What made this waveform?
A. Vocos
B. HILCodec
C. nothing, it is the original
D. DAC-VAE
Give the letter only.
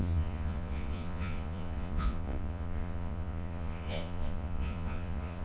A